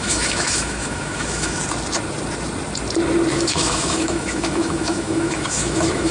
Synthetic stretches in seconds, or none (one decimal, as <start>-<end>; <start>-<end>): 0.0-1.6; 3.3-6.1